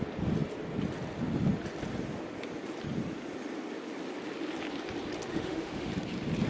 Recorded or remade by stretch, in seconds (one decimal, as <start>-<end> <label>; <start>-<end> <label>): 0.0-5.3 recorded; 5.3-5.9 remade; 5.9-6.5 recorded